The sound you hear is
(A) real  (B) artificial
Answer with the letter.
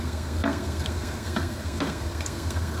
B